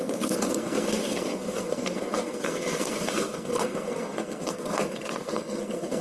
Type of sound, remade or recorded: remade